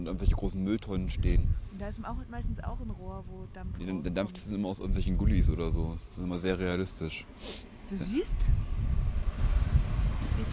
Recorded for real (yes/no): yes